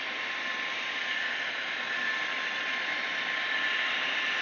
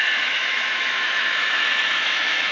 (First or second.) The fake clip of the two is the second